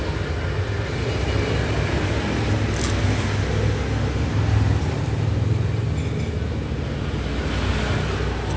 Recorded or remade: recorded